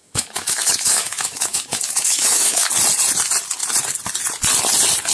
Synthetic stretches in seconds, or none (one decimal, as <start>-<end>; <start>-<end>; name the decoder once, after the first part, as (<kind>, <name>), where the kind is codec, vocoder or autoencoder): 0.0-2.7 (autoencoder, DAC-VAE)